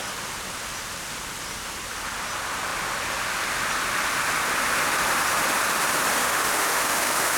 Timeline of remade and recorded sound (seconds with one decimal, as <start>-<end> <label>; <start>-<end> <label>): 0.0-6.2 recorded; 6.2-7.4 remade